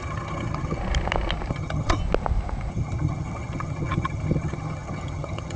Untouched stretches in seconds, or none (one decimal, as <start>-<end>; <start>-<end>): 0.8-1.5; 2.0-2.7